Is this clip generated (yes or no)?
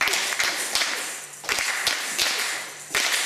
no